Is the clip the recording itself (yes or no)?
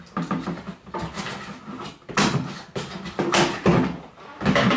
yes